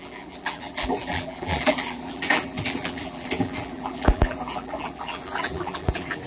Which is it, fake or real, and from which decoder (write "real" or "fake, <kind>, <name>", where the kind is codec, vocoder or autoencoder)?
fake, vocoder, BigVGAN v2